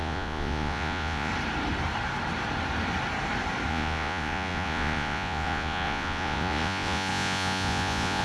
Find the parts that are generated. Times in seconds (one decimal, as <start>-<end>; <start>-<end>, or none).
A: 0.0-1.3; 3.7-8.2